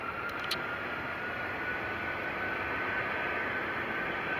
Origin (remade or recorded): recorded